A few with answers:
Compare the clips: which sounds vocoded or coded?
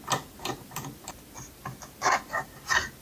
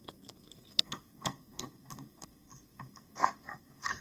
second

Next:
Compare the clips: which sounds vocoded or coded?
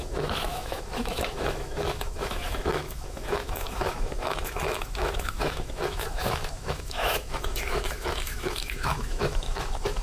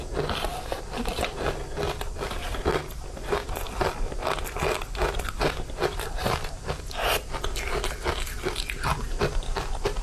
first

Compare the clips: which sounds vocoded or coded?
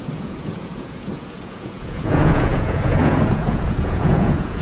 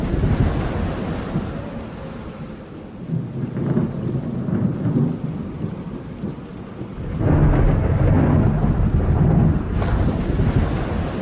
first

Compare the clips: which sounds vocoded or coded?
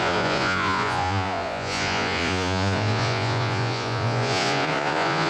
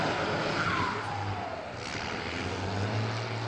first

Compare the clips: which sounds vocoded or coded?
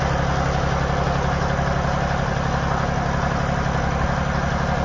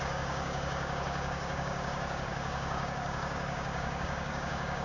second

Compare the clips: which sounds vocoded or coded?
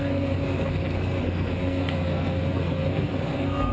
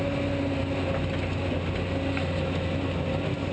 first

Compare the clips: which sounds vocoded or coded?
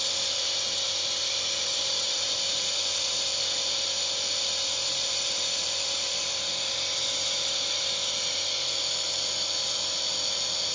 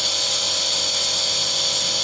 first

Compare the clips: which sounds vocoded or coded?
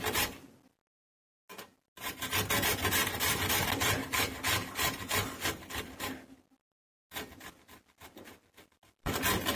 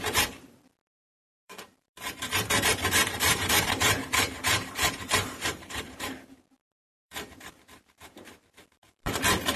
second